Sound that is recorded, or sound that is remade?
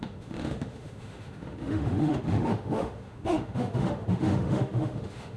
remade